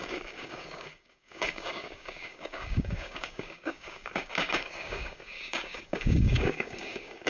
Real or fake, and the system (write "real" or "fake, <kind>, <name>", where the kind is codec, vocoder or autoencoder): fake, codec, DAC